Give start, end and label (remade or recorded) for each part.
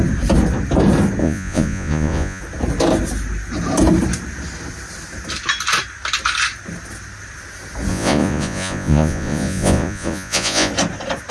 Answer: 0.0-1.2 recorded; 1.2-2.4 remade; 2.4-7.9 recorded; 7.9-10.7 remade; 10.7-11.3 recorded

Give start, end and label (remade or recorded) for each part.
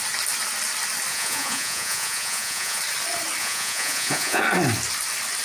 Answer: 0.0-1.1 recorded; 1.1-2.8 remade; 2.8-3.4 recorded; 3.4-4.4 remade; 4.4-5.4 recorded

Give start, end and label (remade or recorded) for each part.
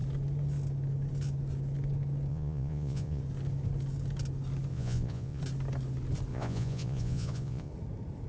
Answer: 0.0-2.3 recorded; 2.3-3.2 remade; 3.2-4.7 recorded; 4.7-5.4 remade; 5.4-6.3 recorded; 6.3-7.7 remade; 7.7-8.3 recorded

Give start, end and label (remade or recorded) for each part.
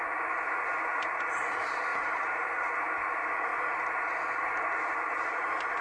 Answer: 0.0-1.9 recorded; 1.9-2.6 remade; 2.6-5.8 recorded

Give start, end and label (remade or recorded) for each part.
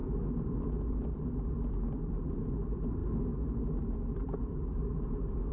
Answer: 0.0-2.2 remade; 2.2-3.0 recorded; 3.0-3.7 remade; 3.7-4.2 recorded; 4.2-5.0 remade; 5.0-5.5 recorded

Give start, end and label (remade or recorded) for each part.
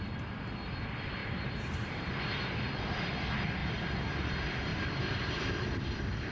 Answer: 0.0-1.2 recorded; 1.2-2.7 remade; 2.7-3.6 recorded; 3.6-4.3 remade; 4.3-4.7 recorded; 4.7-6.3 remade